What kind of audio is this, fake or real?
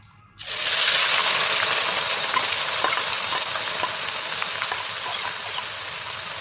real